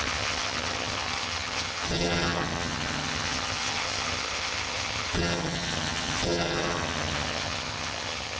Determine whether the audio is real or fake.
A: fake